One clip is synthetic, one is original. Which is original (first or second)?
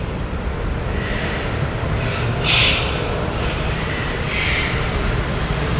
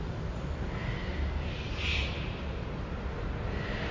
second